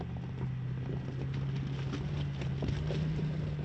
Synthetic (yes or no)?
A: no